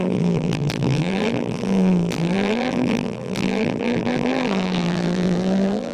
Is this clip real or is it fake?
fake